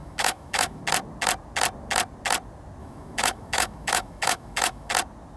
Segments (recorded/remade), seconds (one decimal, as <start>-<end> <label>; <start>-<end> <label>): 0.0-0.8 remade; 0.8-2.8 recorded; 2.8-4.9 remade; 4.9-5.4 recorded